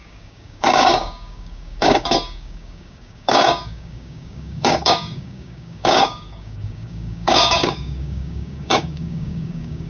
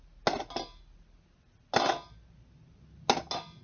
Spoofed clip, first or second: first